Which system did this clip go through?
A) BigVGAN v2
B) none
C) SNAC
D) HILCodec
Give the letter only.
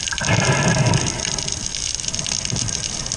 B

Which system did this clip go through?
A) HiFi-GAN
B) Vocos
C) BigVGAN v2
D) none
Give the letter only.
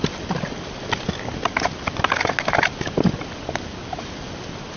D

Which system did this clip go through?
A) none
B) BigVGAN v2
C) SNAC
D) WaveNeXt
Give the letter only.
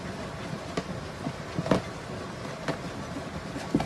A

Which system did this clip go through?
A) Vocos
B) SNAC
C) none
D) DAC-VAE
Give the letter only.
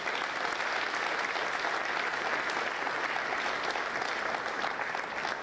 C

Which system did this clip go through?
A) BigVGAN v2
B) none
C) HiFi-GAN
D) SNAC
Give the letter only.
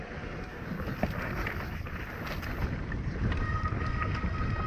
B